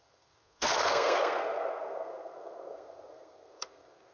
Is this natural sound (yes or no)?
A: no